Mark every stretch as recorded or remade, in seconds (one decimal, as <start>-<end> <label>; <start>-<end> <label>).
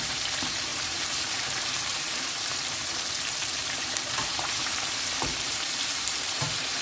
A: 0.0-6.8 remade